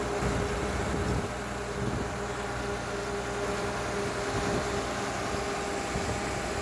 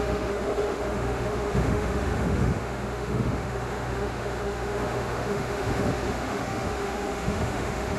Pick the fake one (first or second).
second